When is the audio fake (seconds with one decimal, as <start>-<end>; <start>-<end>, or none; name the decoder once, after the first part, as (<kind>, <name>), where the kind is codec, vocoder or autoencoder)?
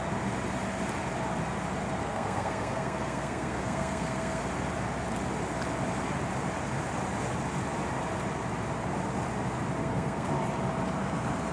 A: 2.0-4.4 (codec, SNAC); 9.8-10.3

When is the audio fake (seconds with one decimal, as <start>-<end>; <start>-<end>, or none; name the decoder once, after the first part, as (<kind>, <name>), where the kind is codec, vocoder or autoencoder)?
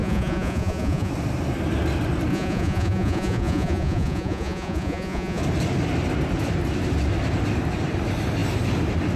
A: 0.0-1.1 (vocoder, Vocos); 2.3-5.4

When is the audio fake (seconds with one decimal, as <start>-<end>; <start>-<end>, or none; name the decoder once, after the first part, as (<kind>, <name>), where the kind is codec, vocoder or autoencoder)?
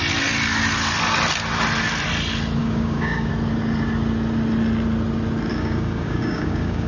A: 2.6-3.3 (codec, DAC); 5.5-6.9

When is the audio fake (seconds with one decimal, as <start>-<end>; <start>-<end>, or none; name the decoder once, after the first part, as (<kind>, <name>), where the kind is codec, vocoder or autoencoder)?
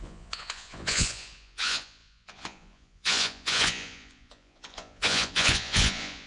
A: 0.0-6.3 (vocoder, Vocos)